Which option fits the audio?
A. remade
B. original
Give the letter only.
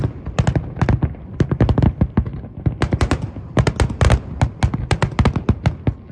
B